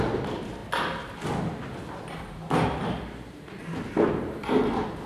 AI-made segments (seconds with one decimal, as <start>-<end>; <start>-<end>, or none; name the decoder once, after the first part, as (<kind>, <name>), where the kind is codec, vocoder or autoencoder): none